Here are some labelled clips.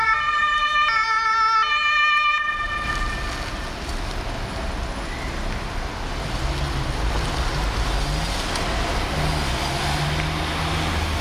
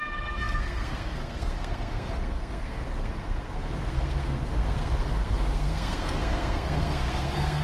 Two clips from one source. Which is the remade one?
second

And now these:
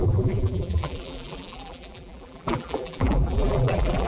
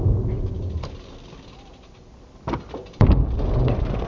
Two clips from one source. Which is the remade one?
first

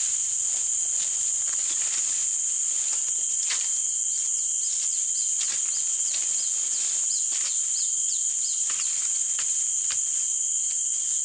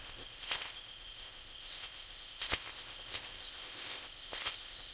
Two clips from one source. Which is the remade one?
second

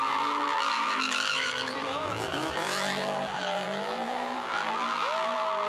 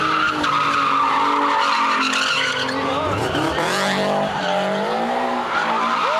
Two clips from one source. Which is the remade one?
first